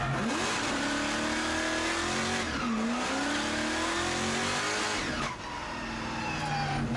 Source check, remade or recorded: recorded